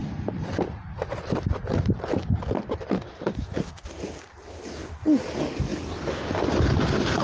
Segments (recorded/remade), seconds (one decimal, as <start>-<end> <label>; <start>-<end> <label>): 0.0-7.2 recorded